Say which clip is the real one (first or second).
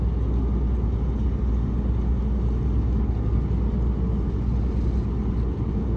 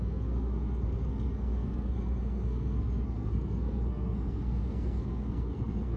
first